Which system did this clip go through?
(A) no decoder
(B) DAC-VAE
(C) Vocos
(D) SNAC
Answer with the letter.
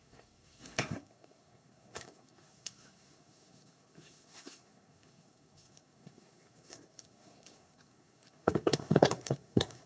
D